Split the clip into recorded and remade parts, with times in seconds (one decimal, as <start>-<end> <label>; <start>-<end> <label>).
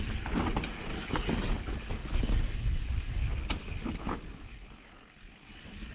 0.0-0.9 recorded; 0.9-1.5 remade; 1.5-5.9 recorded